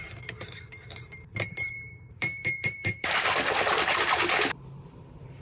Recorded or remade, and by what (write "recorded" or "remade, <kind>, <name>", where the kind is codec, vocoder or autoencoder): remade, vocoder, BigVGAN v2